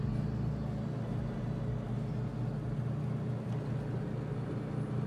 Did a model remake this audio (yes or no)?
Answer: no